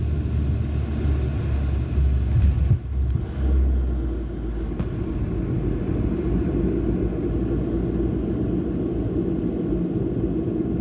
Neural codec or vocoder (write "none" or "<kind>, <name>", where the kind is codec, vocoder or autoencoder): none